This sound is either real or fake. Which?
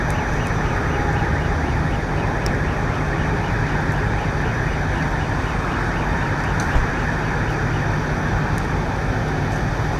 real